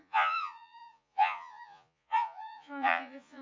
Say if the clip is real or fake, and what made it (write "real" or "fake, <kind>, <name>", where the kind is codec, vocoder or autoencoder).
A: fake, vocoder, Vocos